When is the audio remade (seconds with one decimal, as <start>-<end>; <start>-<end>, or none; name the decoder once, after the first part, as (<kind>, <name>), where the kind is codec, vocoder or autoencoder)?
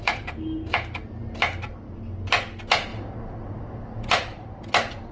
2.9-4.6 (vocoder, BigVGAN v2)